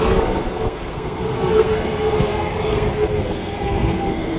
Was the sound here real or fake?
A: fake